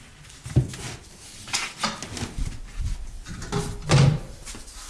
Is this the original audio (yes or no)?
yes